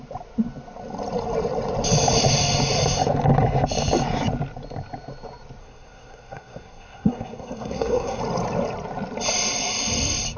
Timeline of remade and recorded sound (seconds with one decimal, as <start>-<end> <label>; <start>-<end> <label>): 0.0-5.6 recorded; 5.6-8.2 remade; 8.2-10.4 recorded